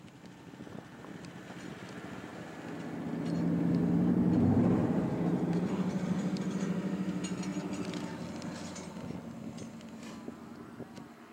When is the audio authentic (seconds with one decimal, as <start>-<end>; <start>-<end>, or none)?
0.0-4.8; 6.4-11.3

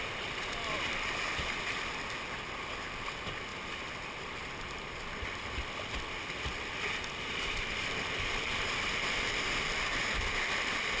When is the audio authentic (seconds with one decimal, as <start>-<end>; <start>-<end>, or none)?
3.5-7.2

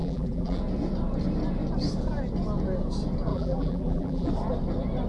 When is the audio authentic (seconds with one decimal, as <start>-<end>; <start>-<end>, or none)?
0.6-3.3; 4.3-5.1

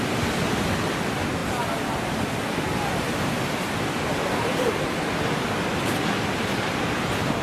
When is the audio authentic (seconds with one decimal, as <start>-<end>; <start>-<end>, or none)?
0.0-7.4

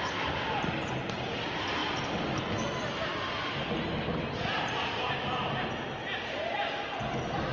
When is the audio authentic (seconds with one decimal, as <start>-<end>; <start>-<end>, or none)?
0.0-1.8; 2.4-7.5

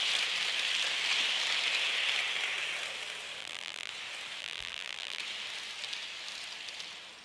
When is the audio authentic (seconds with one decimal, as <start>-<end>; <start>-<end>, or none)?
0.0-3.4; 3.9-4.4; 5.2-7.2

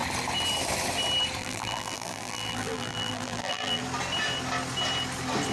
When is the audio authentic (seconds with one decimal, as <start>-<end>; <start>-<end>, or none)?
0.0-1.4; 3.8-5.5